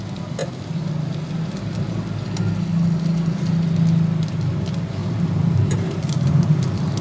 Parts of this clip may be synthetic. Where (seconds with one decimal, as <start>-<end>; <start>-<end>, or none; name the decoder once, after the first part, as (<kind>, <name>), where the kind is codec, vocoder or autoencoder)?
5.0-7.0 (vocoder, BigVGAN v2)